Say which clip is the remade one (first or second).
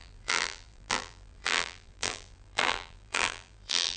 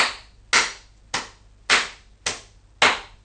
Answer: first